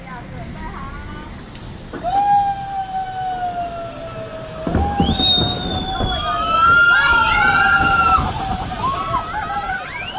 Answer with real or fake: real